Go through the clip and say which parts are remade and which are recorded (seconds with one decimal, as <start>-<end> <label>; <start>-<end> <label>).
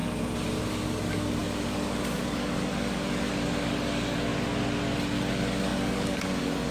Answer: 0.0-0.7 recorded; 0.7-4.3 remade; 4.3-5.3 recorded; 5.3-6.7 remade